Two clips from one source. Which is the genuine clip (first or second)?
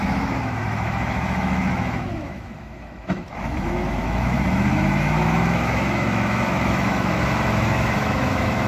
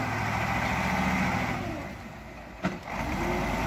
second